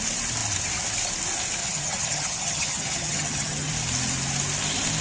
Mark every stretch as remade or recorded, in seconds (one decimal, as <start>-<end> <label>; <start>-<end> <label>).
0.0-1.6 recorded; 1.6-3.7 remade; 3.7-5.0 recorded